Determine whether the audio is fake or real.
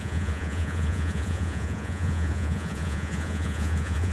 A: fake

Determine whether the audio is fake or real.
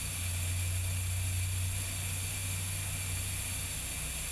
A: real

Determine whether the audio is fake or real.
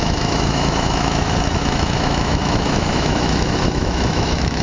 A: fake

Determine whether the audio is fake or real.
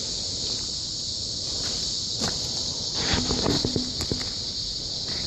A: real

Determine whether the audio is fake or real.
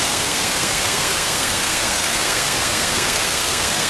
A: fake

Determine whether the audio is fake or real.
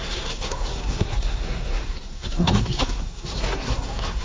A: fake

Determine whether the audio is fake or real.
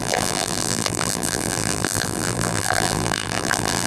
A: fake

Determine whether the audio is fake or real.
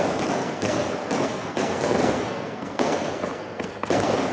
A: fake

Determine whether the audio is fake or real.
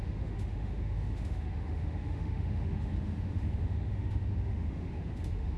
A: fake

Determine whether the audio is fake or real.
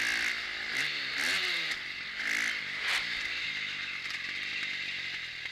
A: real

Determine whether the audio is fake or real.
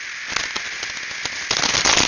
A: real